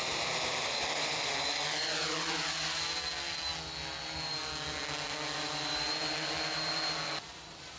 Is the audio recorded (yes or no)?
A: yes